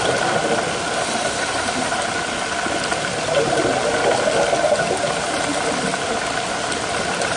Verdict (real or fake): real